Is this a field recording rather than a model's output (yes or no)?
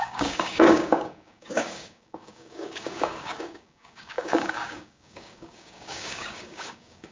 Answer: no